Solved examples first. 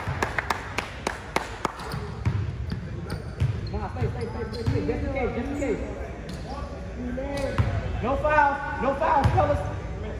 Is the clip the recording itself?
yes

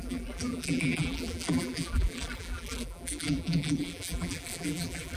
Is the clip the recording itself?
no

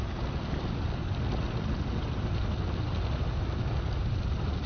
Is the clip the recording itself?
yes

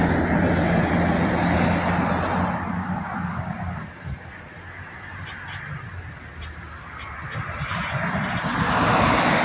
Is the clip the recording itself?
yes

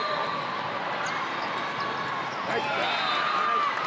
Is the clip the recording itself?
yes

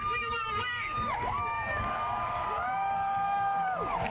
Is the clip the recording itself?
no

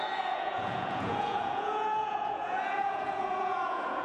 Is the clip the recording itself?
no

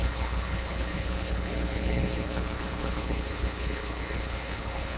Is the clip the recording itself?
no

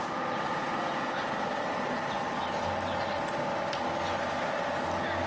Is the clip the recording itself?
yes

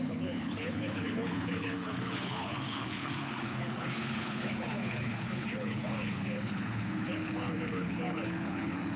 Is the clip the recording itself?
no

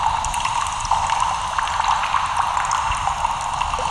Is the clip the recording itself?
yes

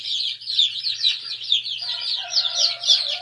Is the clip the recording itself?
no